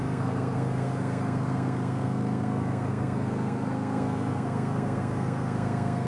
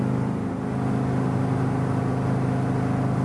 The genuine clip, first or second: second